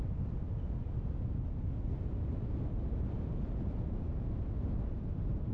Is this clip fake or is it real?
real